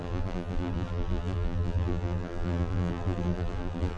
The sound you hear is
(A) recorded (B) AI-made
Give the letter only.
B